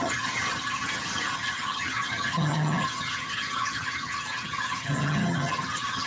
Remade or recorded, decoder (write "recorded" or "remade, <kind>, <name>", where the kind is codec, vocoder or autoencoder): remade, vocoder, HiFi-GAN